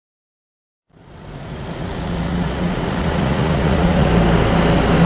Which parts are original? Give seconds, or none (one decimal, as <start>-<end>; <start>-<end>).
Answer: 0.0-1.0; 4.1-5.1